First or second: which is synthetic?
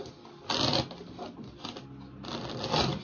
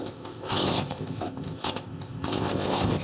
second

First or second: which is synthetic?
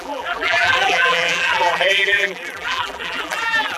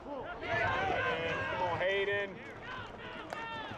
first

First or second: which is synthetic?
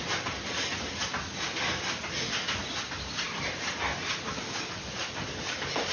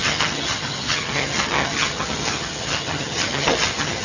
second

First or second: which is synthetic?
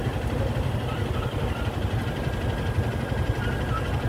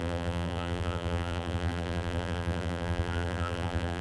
second